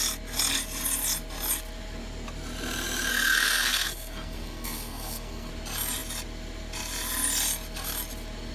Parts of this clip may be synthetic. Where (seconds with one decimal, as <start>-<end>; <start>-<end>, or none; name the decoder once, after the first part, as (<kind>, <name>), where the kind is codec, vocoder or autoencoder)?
3.1-5.5 (codec, SNAC)